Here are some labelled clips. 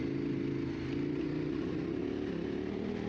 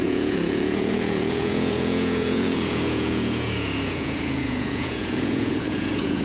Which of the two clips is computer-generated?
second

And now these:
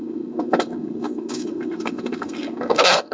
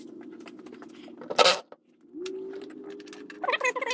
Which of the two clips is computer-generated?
first